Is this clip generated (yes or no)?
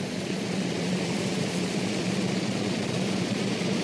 yes